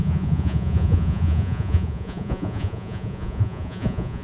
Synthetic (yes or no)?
yes